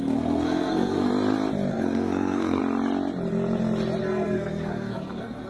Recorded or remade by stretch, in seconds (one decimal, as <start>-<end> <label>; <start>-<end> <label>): 0.0-1.1 remade; 1.1-1.7 recorded; 1.7-2.6 remade; 2.6-4.0 recorded; 4.0-5.5 remade